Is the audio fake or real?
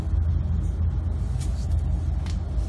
real